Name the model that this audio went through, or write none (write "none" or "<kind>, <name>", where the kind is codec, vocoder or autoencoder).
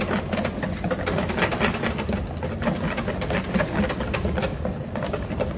none